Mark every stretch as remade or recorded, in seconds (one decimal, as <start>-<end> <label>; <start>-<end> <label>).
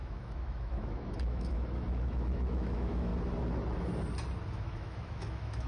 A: 0.0-3.1 remade; 3.1-4.5 recorded; 4.5-5.7 remade